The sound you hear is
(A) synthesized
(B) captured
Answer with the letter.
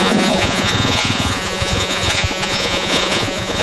A